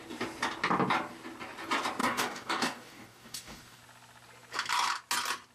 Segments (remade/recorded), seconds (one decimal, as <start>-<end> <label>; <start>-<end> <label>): 0.0-2.0 recorded; 2.0-3.8 remade; 3.8-5.5 recorded